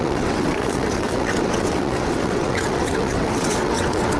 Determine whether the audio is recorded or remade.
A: remade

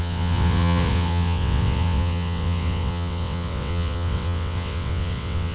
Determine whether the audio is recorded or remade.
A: remade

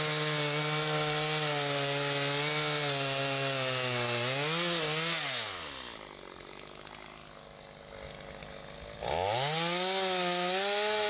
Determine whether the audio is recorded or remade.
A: recorded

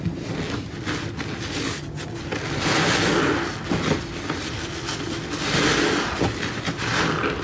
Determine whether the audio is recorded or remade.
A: recorded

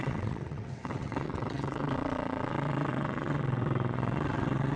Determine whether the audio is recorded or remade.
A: remade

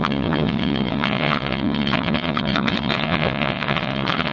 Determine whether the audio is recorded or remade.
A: remade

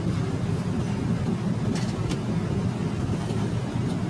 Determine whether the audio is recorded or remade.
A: recorded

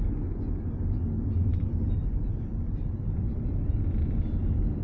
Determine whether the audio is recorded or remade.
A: recorded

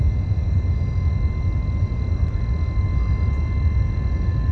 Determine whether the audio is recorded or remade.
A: recorded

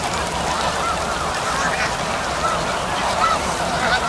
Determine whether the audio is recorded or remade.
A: recorded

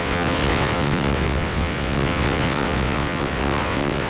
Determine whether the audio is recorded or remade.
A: remade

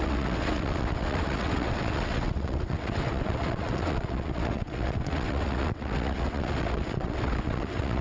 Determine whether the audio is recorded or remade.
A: remade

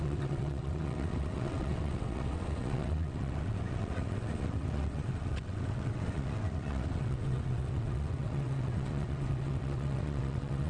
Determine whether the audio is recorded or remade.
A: remade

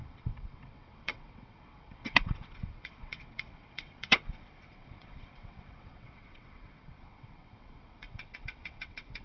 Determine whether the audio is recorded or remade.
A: remade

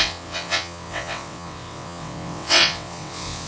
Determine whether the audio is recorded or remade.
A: remade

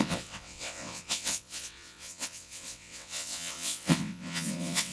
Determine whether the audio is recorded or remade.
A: remade